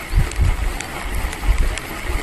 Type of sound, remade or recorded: recorded